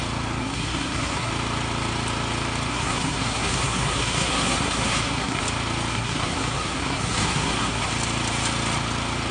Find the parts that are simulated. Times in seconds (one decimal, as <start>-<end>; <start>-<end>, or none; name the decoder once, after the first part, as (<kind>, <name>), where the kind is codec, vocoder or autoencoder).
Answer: 0.4-1.3 (codec, SNAC); 2.7-5.4; 5.9-7.9